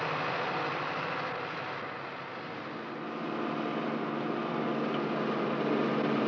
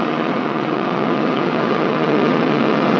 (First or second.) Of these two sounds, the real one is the first